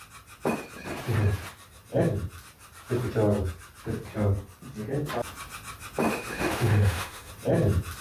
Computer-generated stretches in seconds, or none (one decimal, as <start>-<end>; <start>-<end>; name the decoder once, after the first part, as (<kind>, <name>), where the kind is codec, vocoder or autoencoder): 6.1-7.3 (autoencoder, DAC-VAE)